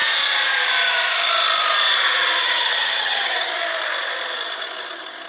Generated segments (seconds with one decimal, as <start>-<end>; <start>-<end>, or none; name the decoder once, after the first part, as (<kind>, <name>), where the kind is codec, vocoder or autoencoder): 2.4-3.5 (vocoder, HiFi-GAN)